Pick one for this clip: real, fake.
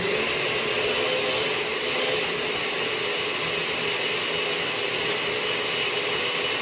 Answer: real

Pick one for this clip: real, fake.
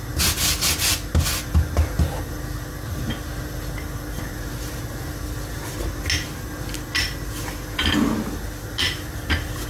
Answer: real